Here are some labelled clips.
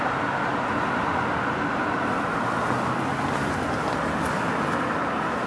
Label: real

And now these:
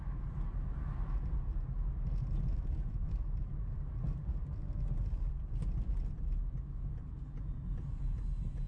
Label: real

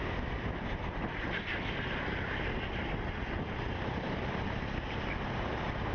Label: real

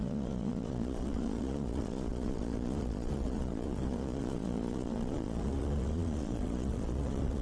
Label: fake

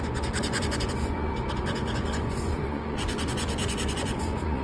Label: fake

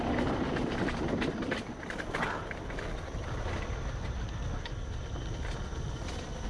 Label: real